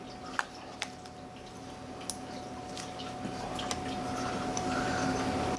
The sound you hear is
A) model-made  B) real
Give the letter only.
B